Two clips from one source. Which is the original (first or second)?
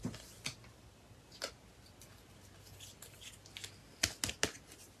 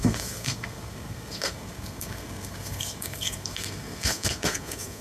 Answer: first